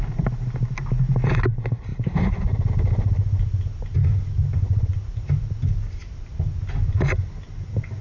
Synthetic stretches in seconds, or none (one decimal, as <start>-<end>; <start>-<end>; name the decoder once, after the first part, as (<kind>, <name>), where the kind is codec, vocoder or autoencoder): none